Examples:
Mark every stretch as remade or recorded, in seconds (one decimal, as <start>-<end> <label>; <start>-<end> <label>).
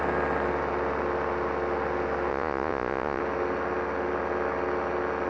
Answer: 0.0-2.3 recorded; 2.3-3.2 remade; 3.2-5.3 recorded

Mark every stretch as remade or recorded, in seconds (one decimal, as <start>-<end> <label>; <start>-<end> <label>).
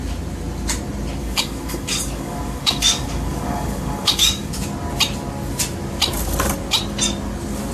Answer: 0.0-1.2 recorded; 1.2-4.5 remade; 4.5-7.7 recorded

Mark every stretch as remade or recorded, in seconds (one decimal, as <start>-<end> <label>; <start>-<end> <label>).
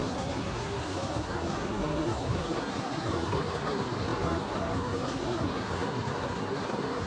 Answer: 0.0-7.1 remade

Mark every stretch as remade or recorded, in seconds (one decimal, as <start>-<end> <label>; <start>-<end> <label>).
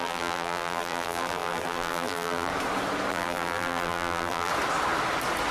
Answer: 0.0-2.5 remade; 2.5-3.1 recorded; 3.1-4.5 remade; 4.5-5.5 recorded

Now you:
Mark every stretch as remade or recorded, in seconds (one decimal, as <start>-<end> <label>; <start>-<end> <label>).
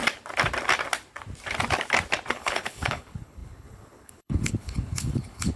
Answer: 0.0-2.3 recorded; 2.3-5.6 remade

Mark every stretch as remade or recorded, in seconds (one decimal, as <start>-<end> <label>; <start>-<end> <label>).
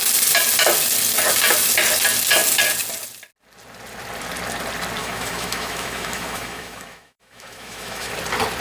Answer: 0.0-5.0 recorded; 5.0-8.1 remade; 8.1-8.6 recorded